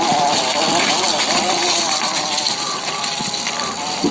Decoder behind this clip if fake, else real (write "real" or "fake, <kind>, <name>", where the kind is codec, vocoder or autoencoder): real